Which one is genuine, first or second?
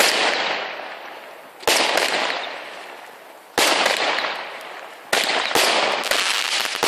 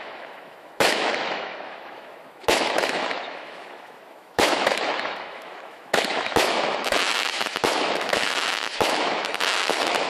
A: first